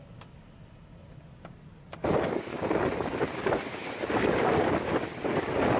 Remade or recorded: recorded